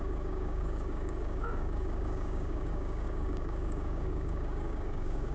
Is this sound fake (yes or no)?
yes